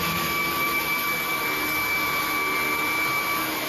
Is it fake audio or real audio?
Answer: real